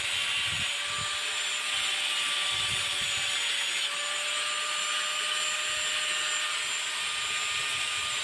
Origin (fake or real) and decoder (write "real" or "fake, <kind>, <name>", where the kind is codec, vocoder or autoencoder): real